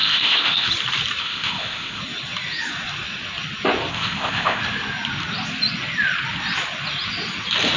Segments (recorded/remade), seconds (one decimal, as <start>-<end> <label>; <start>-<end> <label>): 0.0-0.7 remade; 0.7-1.2 recorded; 1.2-2.0 remade; 2.0-3.9 recorded; 3.9-4.6 remade; 4.6-7.8 recorded